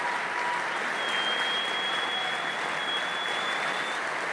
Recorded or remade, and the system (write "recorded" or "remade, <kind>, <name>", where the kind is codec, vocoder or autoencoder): recorded